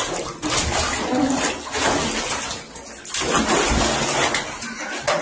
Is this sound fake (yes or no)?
no